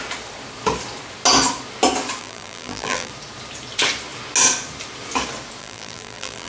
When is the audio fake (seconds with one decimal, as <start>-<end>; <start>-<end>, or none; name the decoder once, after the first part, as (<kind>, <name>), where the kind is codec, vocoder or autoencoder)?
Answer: 2.2-3.1 (vocoder, BigVGAN v2); 5.6-6.5